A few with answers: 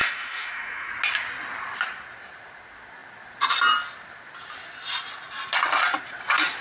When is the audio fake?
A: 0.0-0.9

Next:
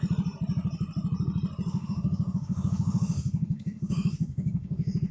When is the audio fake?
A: 1.7-5.1

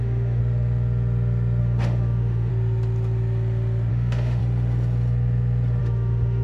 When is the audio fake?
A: 0.0-0.4; 1.6-2.5; 3.9-4.4; 5.8-6.4

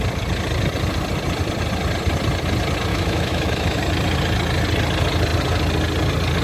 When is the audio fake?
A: 2.9-3.8

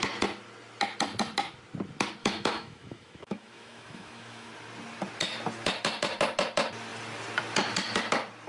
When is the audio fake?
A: 2.2-4.5

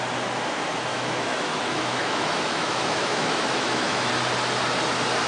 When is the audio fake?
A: 0.9-4.1